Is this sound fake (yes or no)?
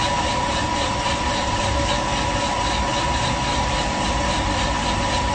no